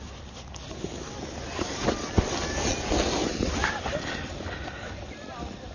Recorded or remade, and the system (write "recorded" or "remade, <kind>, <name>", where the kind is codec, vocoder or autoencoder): recorded